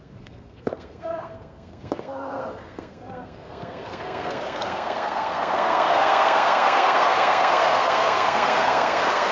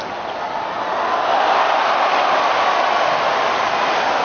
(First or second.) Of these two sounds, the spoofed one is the first